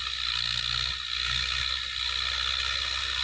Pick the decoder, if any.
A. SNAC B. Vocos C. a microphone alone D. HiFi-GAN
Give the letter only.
C